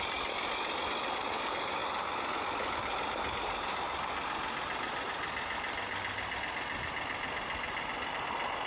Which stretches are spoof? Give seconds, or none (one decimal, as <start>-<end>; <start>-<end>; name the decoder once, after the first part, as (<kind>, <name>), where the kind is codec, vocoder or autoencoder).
none